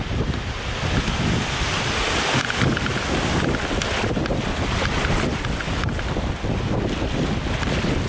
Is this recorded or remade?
recorded